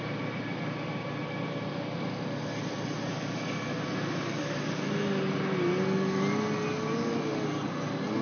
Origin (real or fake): real